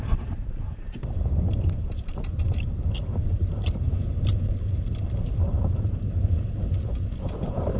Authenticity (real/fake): fake